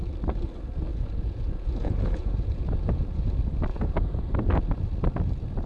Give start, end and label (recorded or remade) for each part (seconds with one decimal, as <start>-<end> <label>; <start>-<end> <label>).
0.0-0.9 recorded; 0.9-3.3 remade; 3.3-3.7 recorded; 3.7-4.2 remade; 4.2-5.7 recorded